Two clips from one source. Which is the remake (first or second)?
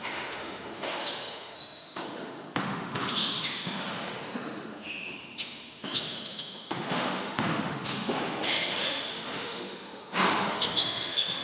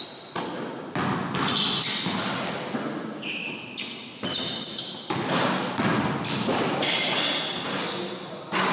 first